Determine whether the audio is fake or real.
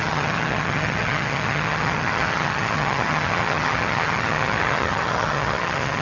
fake